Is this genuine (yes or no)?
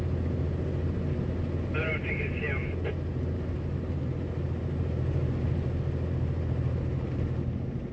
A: yes